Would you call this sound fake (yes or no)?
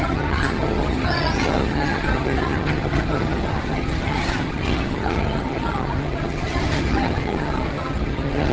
yes